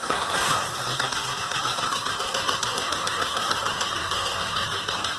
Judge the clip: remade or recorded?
remade